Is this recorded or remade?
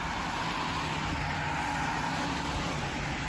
recorded